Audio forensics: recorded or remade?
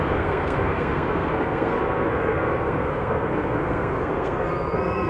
remade